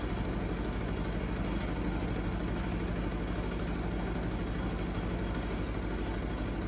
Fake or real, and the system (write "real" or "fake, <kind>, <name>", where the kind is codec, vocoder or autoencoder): real